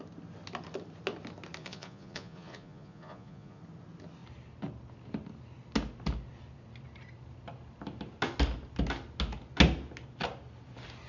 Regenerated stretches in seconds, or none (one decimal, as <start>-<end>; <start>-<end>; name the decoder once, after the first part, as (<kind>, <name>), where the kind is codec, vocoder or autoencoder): 1.6-3.6 (vocoder, Vocos)